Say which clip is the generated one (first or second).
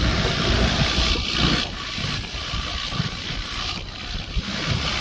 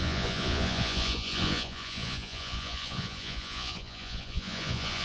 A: second